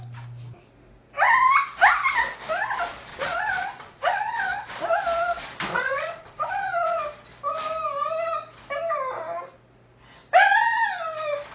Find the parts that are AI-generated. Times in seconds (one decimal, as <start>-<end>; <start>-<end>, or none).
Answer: 3.1-4.8; 5.7-7.0